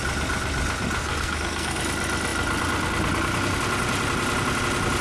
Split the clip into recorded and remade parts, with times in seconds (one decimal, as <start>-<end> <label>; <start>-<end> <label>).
0.0-1.0 recorded; 1.0-1.8 remade; 1.8-5.0 recorded